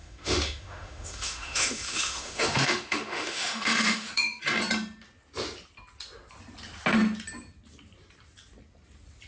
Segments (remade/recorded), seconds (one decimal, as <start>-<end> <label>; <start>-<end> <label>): 0.0-4.4 remade; 4.4-9.3 recorded